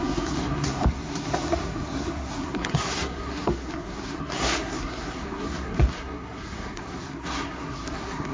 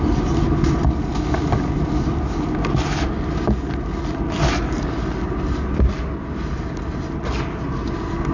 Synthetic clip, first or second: first